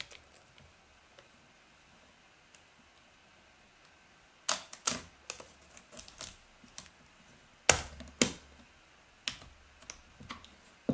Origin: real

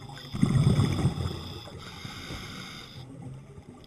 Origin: real